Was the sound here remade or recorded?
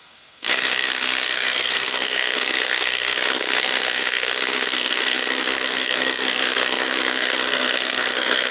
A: remade